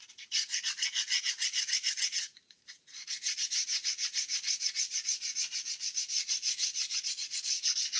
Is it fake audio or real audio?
fake